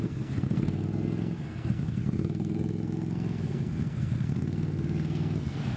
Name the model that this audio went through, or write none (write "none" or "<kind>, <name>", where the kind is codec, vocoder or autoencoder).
codec, SNAC